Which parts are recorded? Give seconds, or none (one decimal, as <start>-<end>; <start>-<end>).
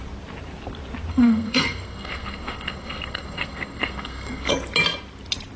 0.0-1.1; 4.5-5.6